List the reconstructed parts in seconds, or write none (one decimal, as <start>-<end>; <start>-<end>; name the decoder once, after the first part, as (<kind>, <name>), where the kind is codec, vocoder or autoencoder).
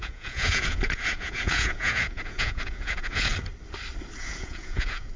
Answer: 0.0-3.3 (vocoder, Vocos); 4.2-5.2